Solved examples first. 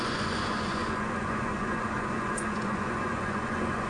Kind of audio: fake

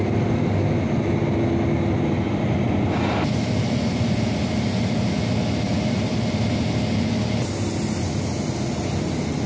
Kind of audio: real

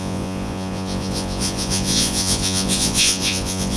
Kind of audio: fake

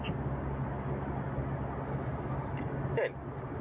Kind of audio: real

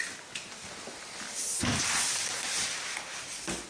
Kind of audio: real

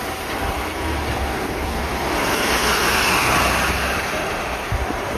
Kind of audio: fake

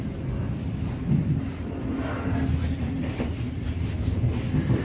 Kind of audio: real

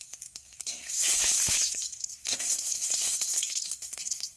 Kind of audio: fake